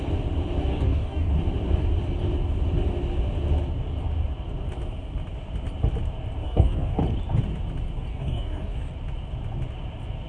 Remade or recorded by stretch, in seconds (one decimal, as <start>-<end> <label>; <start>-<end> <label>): 0.0-0.7 recorded; 0.7-1.3 remade; 1.3-6.4 recorded; 6.4-7.0 remade; 7.0-8.1 recorded; 8.1-8.8 remade; 8.8-10.3 recorded